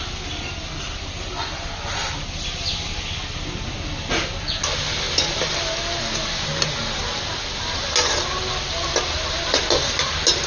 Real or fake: real